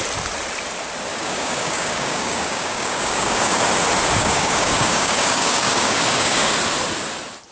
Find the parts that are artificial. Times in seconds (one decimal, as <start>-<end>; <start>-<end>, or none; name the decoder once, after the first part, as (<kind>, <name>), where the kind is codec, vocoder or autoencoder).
1.1-3.6 (codec, DAC); 4.2-6.5